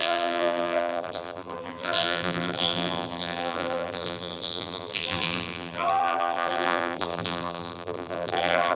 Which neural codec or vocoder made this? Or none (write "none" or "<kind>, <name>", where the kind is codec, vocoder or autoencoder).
vocoder, BigVGAN v2